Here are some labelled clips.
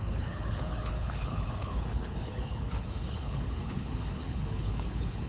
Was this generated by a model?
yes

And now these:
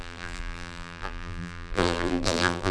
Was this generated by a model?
yes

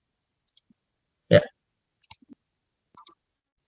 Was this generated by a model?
yes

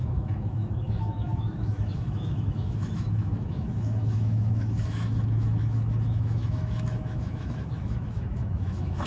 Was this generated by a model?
yes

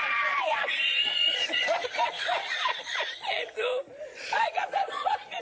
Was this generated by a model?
yes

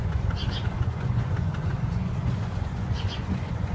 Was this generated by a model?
yes